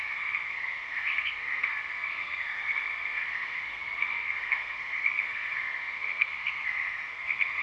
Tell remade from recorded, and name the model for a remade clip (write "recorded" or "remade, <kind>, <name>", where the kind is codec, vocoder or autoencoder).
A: remade, codec, SNAC